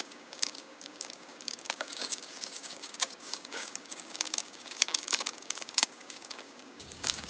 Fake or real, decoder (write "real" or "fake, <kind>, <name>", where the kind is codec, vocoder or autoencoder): fake, codec, DAC